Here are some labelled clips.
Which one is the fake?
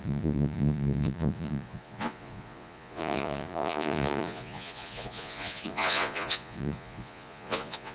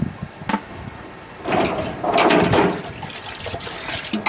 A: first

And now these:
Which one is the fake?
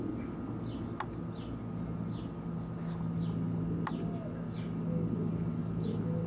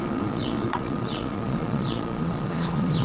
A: second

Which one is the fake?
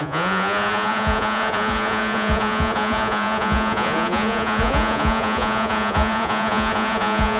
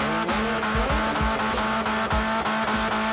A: first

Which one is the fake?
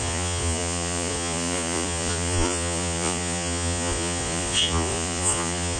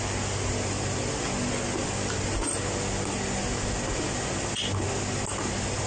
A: first